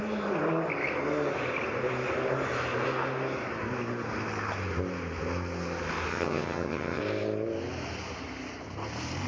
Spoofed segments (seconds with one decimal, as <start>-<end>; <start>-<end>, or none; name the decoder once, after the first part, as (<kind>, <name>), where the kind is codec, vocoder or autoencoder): 6.1-7.0 (vocoder, HiFi-GAN)